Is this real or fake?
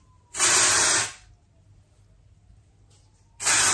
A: real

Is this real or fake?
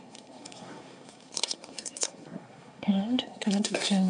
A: fake